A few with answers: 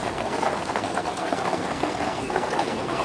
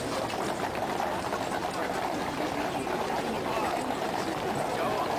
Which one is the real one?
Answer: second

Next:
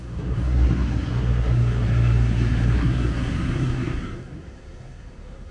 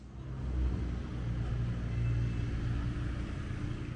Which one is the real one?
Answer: second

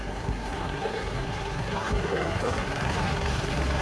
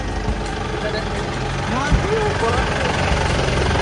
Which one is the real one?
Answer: second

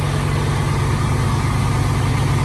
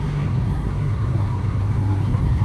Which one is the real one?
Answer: first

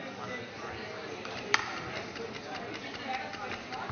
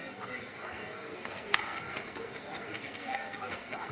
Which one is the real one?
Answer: first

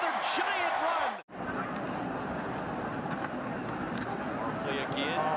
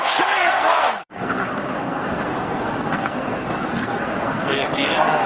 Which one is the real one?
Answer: first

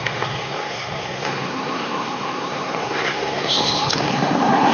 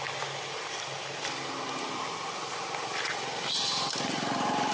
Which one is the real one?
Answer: second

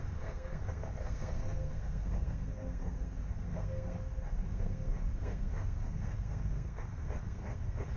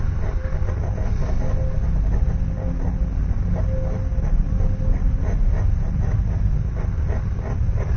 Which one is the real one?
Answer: second